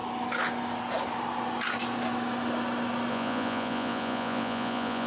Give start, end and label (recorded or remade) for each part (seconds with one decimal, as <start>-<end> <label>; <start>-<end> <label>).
0.0-3.1 recorded; 3.1-5.1 remade